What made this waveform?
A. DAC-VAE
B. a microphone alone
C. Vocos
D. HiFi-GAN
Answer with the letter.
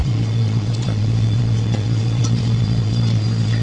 C